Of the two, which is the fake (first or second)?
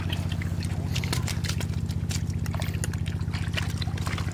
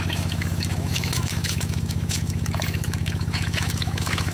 second